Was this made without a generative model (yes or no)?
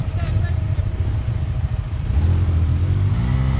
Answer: yes